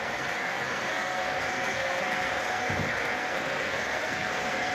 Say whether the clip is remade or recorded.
remade